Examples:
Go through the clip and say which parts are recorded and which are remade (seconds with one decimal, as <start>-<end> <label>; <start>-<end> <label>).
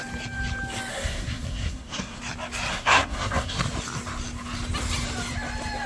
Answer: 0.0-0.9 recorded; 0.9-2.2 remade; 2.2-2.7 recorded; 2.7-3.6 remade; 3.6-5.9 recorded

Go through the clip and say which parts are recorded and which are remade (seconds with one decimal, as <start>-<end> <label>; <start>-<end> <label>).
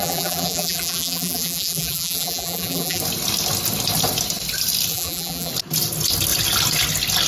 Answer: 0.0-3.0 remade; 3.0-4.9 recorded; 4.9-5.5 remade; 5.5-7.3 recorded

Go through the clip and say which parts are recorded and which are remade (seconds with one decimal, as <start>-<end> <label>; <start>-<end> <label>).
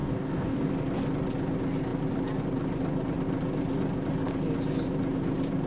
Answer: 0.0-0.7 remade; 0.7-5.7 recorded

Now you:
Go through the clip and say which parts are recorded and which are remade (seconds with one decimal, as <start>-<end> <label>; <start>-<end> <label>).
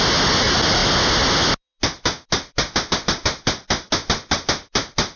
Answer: 0.0-5.2 recorded